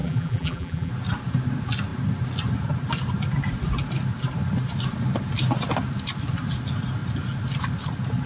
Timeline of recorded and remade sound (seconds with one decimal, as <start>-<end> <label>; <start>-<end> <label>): 0.0-0.9 remade; 0.9-8.3 recorded